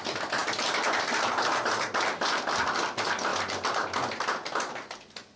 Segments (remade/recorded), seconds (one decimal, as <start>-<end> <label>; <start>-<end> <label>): 0.0-5.4 recorded